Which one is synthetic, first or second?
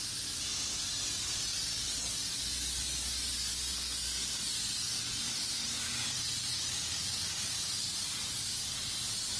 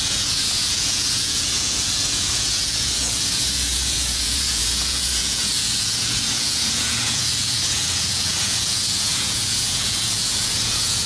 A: second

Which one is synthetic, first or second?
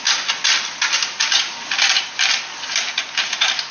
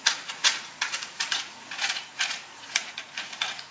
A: second